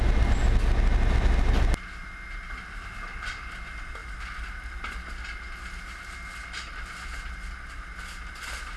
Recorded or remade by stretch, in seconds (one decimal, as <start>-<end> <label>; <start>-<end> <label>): 0.0-8.8 recorded